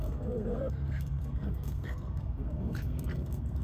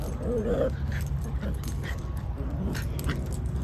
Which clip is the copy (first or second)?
first